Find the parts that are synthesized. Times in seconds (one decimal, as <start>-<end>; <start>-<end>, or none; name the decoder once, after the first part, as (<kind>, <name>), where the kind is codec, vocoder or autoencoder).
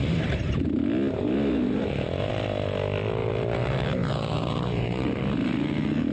1.6-2.3 (vocoder, BigVGAN v2); 3.2-5.2